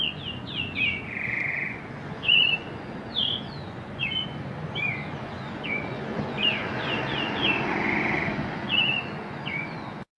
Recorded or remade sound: remade